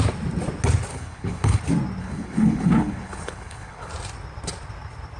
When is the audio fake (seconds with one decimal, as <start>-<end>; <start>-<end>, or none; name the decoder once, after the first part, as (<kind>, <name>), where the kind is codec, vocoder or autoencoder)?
0.9-1.6 (codec, HILCodec); 2.0-3.9